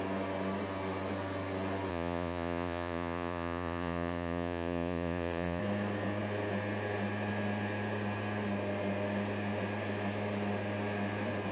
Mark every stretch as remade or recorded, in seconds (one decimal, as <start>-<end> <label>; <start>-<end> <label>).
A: 0.0-1.9 recorded; 1.9-5.6 remade; 5.6-11.5 recorded